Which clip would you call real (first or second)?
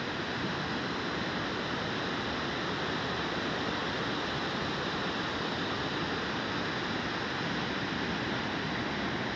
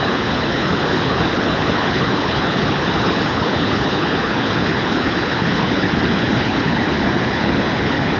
first